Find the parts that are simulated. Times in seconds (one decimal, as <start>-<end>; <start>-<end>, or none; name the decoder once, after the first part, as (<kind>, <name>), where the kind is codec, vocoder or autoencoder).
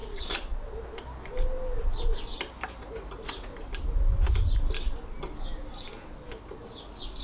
0.0-0.6 (vocoder, Vocos)